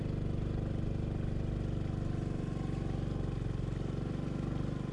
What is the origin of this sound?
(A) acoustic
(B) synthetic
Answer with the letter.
A